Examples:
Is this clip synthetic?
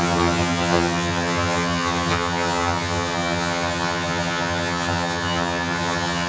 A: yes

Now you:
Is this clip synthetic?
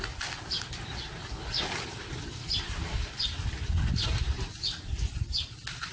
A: no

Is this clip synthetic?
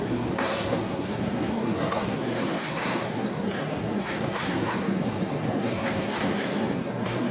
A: yes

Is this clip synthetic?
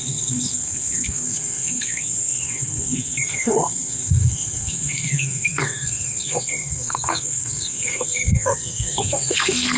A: yes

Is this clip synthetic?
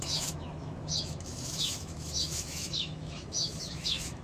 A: yes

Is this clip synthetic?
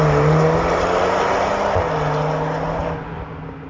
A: no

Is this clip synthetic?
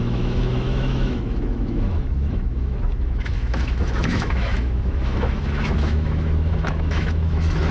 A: yes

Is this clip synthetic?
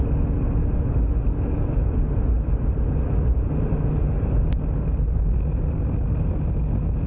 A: no